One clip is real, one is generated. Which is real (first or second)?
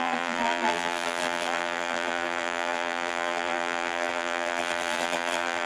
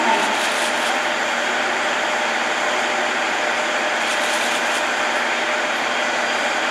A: second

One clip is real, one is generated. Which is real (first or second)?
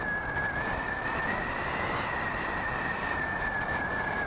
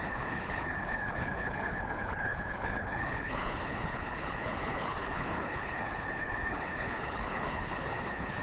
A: first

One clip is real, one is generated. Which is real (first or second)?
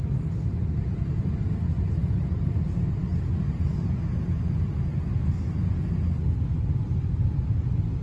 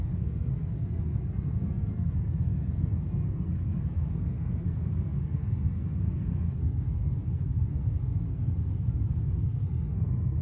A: first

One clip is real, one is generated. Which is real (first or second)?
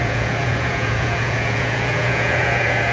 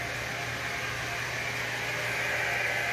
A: second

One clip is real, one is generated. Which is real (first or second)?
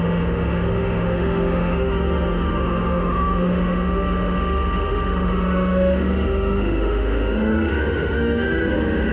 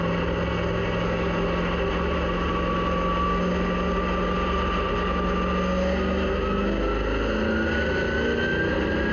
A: second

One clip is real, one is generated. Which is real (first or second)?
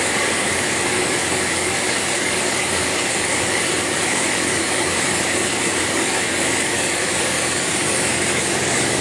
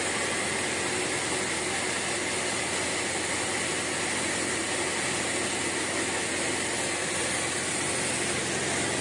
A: second